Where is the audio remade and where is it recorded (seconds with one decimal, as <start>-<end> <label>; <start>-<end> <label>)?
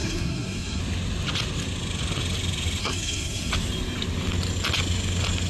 0.0-0.8 remade; 0.8-2.8 recorded; 2.8-3.5 remade; 3.5-5.5 recorded